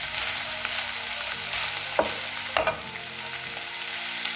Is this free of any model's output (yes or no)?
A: yes